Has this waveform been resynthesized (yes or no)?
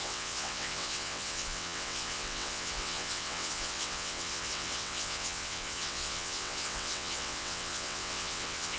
yes